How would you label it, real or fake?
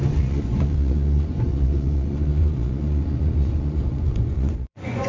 fake